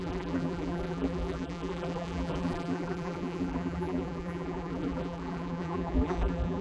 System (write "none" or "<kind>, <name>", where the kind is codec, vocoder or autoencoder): vocoder, BigVGAN v2